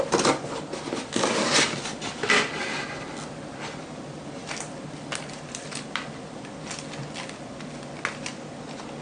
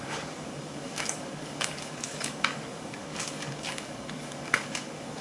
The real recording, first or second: first